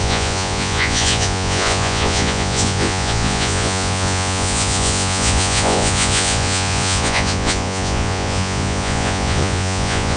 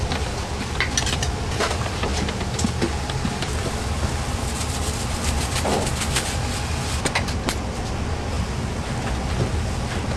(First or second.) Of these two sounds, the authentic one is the second